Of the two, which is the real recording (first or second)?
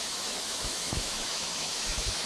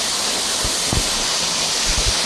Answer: second